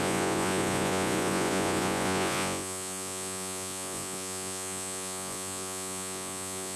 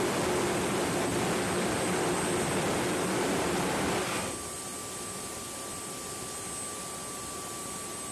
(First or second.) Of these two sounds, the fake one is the first